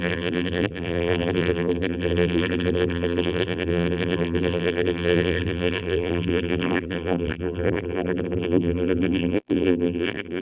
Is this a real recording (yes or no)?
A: no